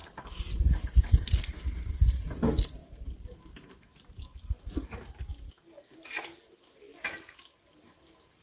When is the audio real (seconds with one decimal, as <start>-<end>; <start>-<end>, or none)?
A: 1.0-2.8; 4.2-8.4